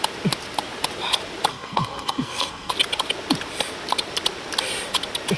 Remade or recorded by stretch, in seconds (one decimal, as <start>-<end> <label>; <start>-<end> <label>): 0.0-1.5 recorded; 1.5-2.7 remade; 2.7-5.4 recorded